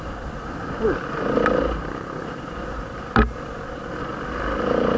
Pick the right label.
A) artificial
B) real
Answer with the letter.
A